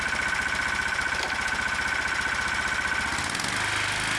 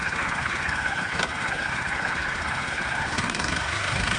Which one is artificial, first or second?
second